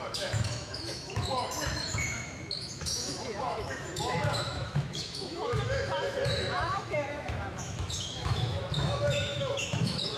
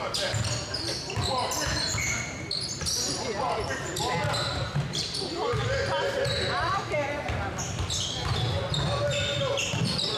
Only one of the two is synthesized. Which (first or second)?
first